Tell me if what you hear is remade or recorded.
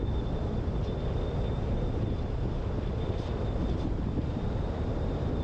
remade